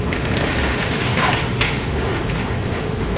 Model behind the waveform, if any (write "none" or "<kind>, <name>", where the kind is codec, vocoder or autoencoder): autoencoder, DAC-VAE